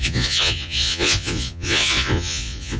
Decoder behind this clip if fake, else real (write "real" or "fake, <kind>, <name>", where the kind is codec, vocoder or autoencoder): fake, vocoder, Vocos